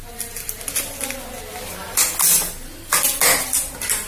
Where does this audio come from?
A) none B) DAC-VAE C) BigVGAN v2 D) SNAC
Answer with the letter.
A